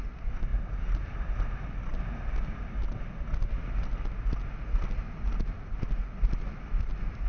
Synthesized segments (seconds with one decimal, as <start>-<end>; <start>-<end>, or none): none